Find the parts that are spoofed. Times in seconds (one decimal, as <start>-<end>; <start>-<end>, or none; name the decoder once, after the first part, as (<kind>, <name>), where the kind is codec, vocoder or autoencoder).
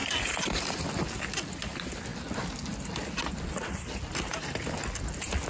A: none